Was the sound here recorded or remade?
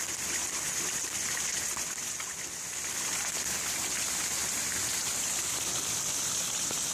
recorded